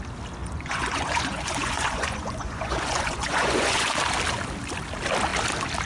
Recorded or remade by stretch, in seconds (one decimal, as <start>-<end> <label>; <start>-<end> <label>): 0.0-0.4 recorded; 0.4-3.9 remade; 3.9-5.9 recorded